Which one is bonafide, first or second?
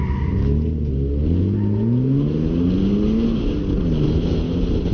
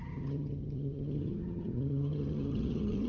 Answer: first